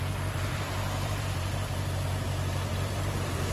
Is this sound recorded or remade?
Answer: remade